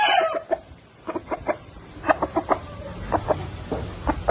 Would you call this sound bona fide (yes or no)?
yes